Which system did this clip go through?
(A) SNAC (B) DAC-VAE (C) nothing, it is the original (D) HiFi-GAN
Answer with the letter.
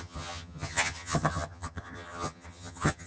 D